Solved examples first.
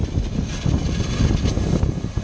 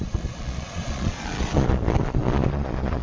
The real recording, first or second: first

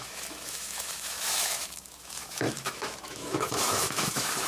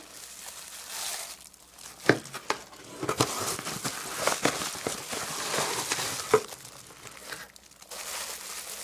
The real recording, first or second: second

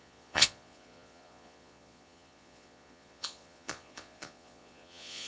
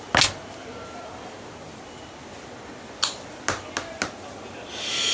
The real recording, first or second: second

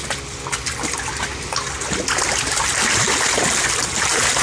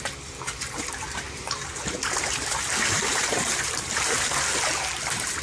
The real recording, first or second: first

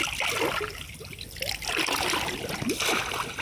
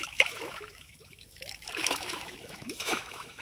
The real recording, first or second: first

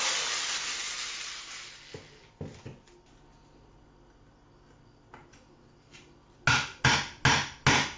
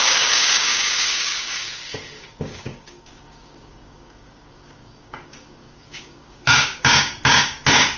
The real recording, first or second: first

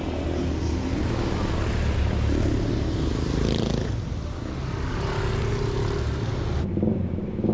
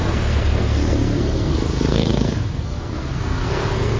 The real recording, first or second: first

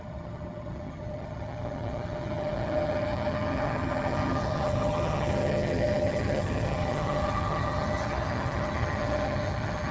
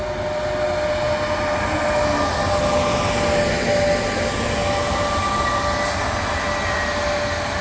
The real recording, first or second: second